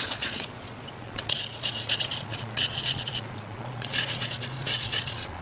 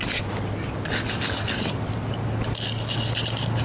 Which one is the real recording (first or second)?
second